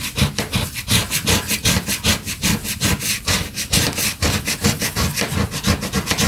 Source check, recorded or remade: recorded